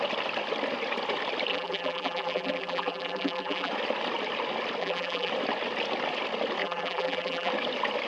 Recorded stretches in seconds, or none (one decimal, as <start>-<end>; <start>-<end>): 0.0-1.5; 3.7-4.8; 5.3-6.6; 7.5-8.1